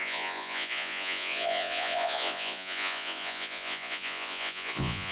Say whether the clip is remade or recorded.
remade